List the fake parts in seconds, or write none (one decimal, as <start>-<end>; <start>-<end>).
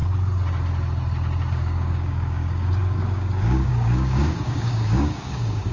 1.5-5.7